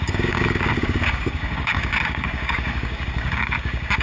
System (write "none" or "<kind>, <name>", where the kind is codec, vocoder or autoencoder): codec, DAC